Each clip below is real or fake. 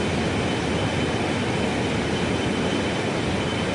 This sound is real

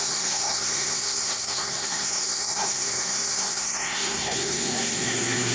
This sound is fake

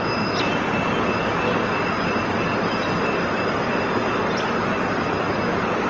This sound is real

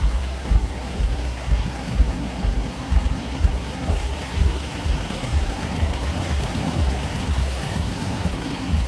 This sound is fake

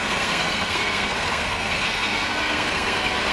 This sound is fake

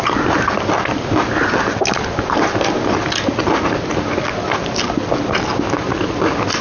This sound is real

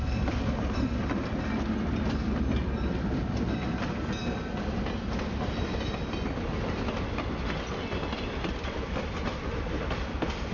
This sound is real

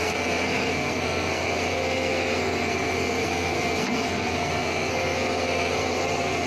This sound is fake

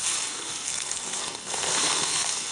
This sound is fake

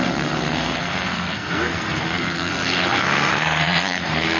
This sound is fake